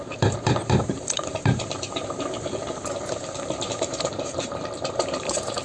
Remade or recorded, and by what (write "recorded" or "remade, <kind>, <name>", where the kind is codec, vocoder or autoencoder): remade, vocoder, BigVGAN v2